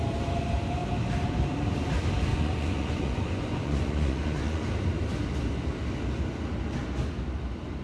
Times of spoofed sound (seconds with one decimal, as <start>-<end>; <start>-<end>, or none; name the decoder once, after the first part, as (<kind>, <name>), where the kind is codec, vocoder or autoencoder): 2.3-4.7 (vocoder, Vocos)